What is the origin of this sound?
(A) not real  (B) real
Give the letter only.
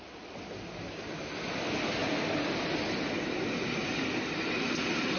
B